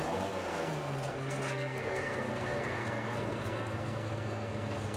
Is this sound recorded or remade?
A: remade